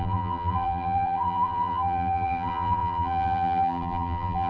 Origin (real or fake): fake